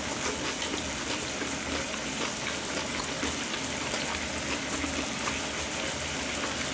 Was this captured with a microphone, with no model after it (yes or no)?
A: yes